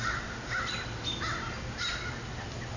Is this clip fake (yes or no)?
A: no